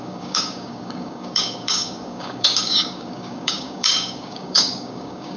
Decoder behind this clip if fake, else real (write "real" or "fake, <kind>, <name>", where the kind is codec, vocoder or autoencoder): fake, codec, DAC